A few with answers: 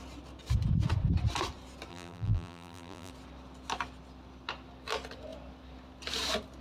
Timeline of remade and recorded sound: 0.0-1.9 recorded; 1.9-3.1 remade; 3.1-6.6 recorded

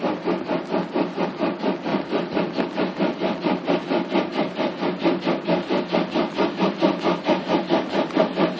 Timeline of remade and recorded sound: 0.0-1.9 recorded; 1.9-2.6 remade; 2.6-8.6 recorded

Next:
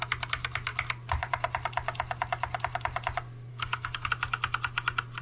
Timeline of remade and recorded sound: 0.0-3.5 recorded; 3.5-4.1 remade; 4.1-5.2 recorded

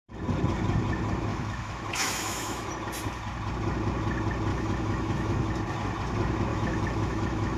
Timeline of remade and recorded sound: 0.0-1.3 recorded; 1.3-2.7 remade; 2.7-4.5 recorded; 4.5-5.5 remade; 5.5-6.5 recorded; 6.5-7.6 remade

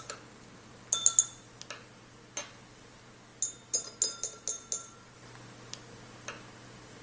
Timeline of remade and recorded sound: 0.0-7.0 recorded

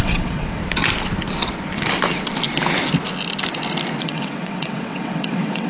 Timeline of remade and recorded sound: 0.0-0.6 remade; 0.6-4.0 recorded; 4.0-5.7 remade